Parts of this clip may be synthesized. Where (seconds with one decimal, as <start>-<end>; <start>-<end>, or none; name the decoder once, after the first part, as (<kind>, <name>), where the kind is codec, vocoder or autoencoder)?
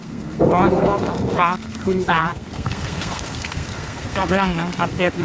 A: 0.0-5.2 (codec, SNAC)